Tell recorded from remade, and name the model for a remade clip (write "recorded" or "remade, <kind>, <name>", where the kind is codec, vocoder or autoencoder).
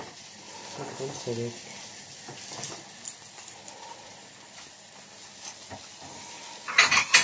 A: recorded